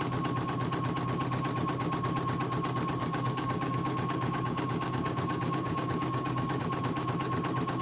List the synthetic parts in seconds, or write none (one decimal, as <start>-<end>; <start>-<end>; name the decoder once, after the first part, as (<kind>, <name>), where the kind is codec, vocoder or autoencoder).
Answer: 3.0-6.6 (codec, DAC)